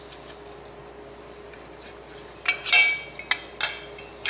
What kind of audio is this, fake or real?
real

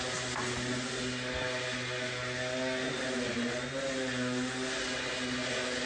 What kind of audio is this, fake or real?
real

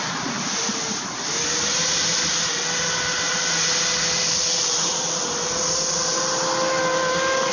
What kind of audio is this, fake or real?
real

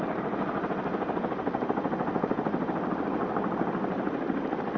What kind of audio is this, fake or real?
real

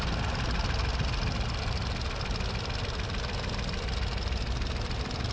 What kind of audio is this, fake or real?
real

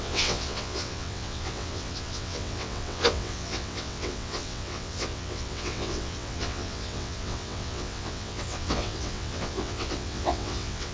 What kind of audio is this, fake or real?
fake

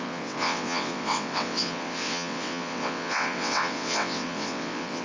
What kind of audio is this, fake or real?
fake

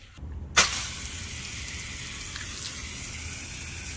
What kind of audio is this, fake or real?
real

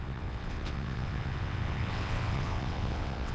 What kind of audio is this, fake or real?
fake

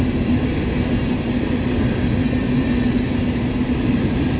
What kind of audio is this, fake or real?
real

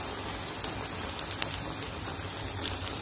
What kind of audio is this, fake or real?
real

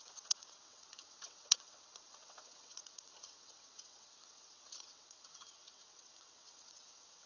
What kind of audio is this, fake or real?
fake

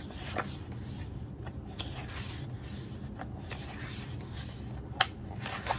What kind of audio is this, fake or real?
real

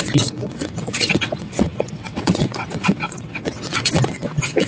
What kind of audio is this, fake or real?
fake